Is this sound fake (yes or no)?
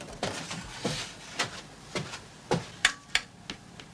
no